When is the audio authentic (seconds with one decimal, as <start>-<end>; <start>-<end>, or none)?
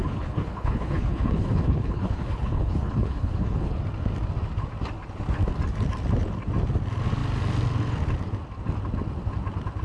3.8-9.8